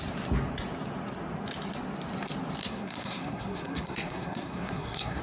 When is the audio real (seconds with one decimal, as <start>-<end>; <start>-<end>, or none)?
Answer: 0.0-2.6